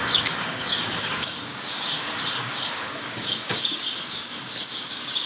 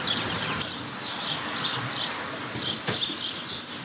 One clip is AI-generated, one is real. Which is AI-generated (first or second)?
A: first